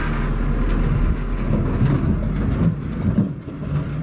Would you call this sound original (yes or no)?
yes